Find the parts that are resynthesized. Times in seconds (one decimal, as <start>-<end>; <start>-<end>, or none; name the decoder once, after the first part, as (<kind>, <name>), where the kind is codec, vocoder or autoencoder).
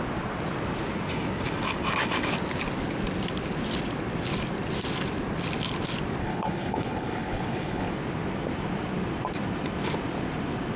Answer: 6.2-7.9 (codec, HILCodec)